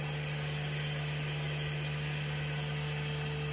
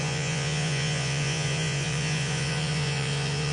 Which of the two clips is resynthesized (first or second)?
second